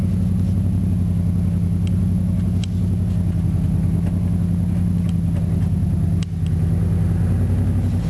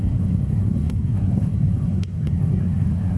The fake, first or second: second